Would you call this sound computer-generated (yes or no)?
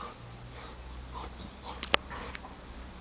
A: no